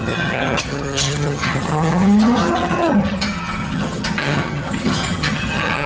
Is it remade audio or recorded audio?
remade